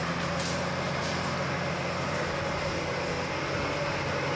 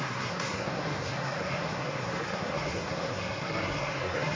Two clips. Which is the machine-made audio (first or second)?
second